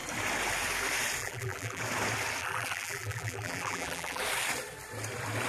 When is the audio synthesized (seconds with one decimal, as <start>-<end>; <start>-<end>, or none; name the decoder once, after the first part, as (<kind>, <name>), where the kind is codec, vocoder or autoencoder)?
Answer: 1.2-1.8 (vocoder, BigVGAN v2); 2.4-4.2